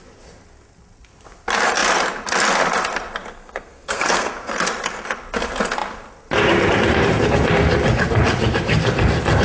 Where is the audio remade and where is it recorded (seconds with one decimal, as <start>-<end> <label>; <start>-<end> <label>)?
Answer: 0.0-3.3 recorded; 3.3-4.3 remade; 4.3-9.4 recorded